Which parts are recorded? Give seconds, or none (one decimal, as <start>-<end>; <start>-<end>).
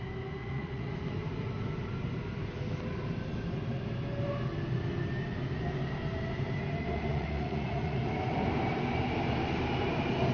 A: 0.0-0.4; 0.9-7.1; 8.0-10.3